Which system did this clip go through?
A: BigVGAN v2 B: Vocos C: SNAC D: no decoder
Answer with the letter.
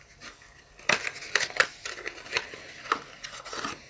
D